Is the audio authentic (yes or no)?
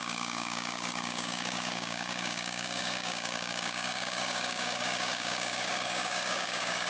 no